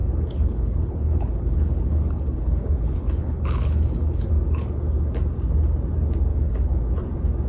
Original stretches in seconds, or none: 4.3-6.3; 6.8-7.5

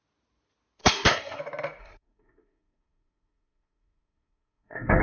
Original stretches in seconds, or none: 0.0-0.8; 1.4-1.8